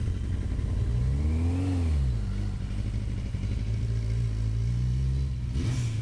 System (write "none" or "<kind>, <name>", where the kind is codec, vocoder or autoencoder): none